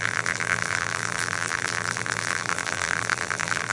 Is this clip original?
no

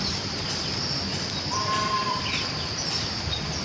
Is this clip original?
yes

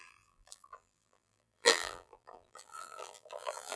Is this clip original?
no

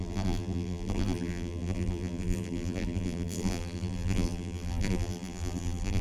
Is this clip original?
no